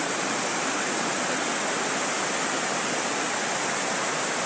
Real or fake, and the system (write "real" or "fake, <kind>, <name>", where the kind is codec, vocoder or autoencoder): real